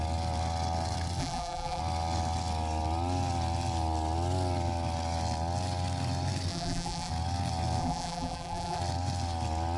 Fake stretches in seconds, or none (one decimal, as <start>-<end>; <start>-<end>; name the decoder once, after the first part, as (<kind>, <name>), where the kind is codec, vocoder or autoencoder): 1.2-1.8 (vocoder, BigVGAN v2); 6.5-7.1; 7.8-8.8